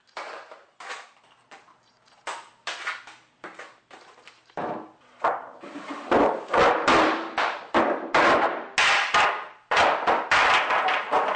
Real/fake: real